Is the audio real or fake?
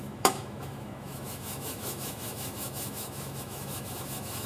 fake